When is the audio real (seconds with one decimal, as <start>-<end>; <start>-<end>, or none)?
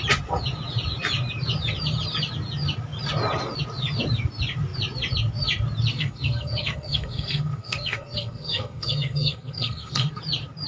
0.0-5.9; 10.2-10.7